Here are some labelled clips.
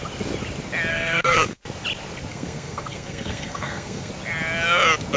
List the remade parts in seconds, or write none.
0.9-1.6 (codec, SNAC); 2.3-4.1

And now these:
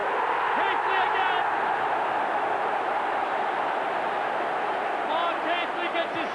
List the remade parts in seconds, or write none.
none

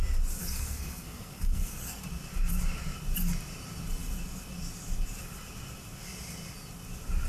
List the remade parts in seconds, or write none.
0.4-2.0 (codec, SNAC)

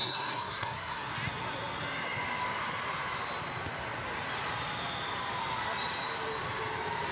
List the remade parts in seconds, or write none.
0.0-1.1 (codec, SNAC)

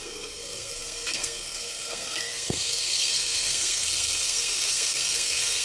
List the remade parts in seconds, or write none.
0.0-5.6 (codec, SNAC)

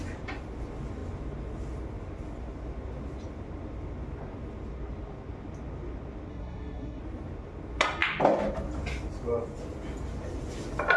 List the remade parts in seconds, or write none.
6.3-7.0 (codec, SNAC)